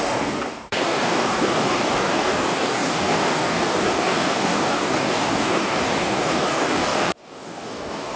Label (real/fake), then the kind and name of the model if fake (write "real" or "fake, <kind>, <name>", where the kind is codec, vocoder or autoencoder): fake, codec, DAC